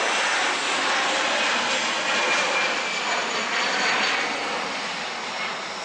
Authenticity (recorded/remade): recorded